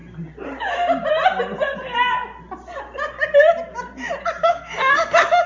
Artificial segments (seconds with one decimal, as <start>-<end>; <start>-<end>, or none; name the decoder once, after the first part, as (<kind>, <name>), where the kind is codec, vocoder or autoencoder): 4.4-5.5 (codec, DAC)